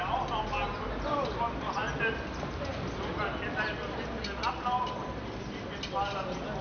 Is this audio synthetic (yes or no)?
no